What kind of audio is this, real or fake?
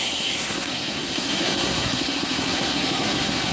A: fake